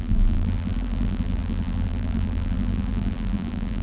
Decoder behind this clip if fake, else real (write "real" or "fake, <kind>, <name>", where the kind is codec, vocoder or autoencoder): fake, vocoder, BigVGAN v2